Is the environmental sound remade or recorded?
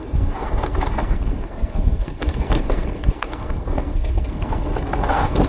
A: remade